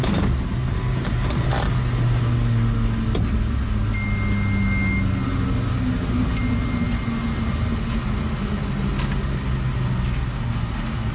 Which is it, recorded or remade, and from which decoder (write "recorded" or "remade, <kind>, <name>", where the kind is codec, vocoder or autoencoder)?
recorded